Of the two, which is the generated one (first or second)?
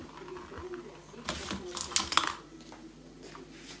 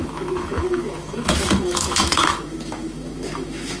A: second